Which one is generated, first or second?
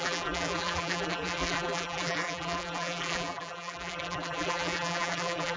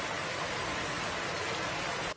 first